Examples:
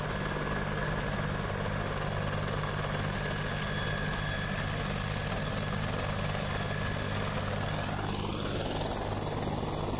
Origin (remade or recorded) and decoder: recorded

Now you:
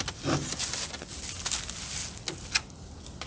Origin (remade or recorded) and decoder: recorded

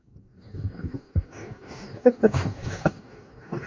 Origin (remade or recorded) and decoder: remade, codec, DAC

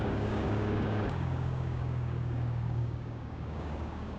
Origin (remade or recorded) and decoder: remade, codec, DAC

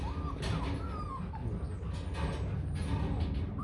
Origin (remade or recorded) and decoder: recorded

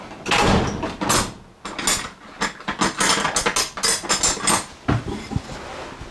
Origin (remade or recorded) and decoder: recorded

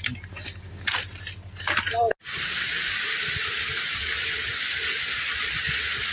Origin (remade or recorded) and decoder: recorded